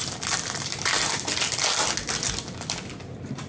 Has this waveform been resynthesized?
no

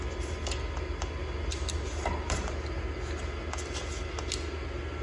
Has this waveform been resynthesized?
no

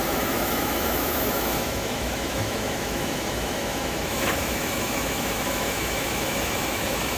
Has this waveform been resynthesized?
yes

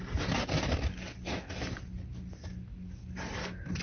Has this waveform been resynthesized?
no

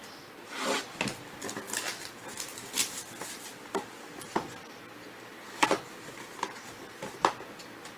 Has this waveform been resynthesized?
no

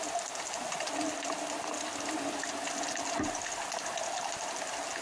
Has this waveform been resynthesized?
no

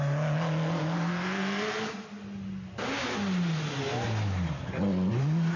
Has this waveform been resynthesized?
no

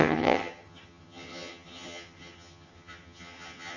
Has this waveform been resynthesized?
yes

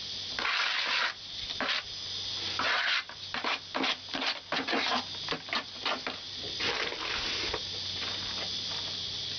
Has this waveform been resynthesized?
no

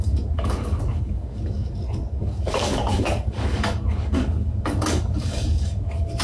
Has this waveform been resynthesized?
yes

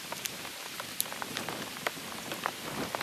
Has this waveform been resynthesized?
no